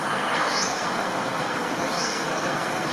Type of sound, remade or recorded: remade